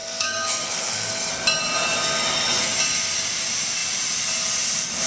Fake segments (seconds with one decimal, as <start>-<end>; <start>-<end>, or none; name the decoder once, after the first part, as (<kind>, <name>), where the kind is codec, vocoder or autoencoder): 0.0-1.3 (codec, SNAC)